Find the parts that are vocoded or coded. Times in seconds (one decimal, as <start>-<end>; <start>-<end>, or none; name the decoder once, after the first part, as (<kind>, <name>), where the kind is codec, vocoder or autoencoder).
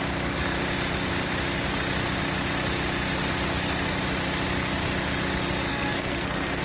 5.7-6.6 (codec, SNAC)